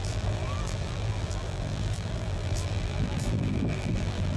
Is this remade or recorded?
remade